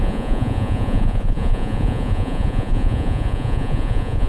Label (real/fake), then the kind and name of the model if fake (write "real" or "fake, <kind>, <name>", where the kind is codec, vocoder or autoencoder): fake, vocoder, Vocos